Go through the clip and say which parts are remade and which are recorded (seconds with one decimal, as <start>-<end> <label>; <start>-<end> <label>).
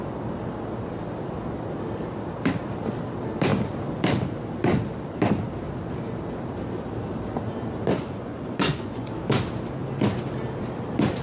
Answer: 0.0-7.9 recorded; 7.9-9.1 remade; 9.1-11.2 recorded